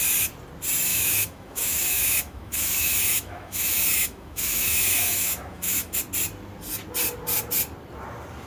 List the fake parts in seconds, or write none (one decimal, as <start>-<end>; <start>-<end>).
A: 0.9-6.0